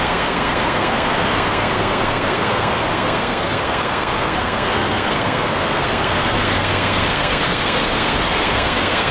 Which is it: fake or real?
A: fake